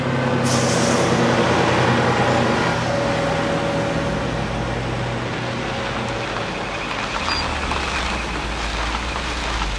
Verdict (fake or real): real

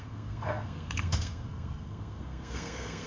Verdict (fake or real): fake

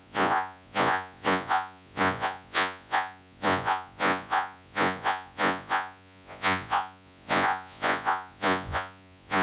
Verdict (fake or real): fake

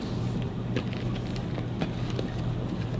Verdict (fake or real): real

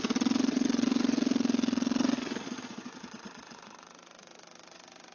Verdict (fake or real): fake